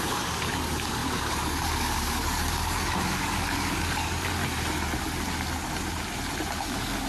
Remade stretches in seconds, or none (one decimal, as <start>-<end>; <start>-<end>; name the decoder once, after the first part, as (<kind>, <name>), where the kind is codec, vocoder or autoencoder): 0.0-4.4 (codec, DAC); 6.6-7.1

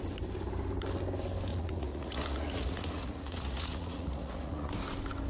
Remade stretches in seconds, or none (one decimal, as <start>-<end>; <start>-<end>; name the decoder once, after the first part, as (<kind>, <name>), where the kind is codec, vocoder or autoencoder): 1.5-4.7 (vocoder, Vocos)

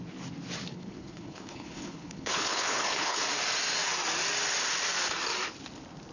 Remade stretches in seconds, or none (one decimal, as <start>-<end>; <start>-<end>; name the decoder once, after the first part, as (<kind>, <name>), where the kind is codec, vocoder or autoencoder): 0.7-3.2 (codec, HILCodec)

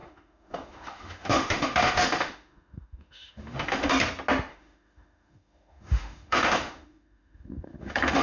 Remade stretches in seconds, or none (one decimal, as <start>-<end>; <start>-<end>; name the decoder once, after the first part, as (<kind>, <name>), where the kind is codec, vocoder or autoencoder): 0.0-3.9 (autoencoder, DAC-VAE); 4.5-8.2

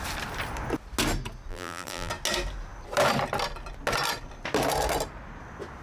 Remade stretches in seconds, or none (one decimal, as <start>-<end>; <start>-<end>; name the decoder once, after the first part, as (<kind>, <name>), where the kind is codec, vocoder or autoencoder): 1.5-2.1 (vocoder, BigVGAN v2)

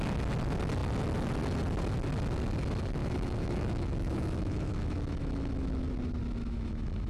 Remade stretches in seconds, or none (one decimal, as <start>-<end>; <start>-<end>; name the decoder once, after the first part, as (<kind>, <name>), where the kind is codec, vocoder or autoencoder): 3.0-5.9 (autoencoder, DAC-VAE); 6.4-7.1